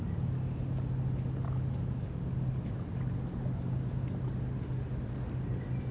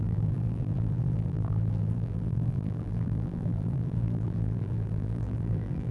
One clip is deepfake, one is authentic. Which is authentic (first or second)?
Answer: first